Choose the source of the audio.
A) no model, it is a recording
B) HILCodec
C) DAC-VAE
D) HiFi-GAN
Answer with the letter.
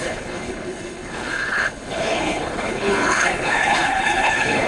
B